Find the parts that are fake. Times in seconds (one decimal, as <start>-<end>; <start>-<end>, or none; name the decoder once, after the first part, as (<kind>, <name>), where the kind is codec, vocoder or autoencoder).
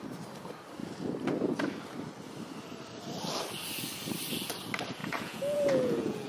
5.0-6.3 (vocoder, Vocos)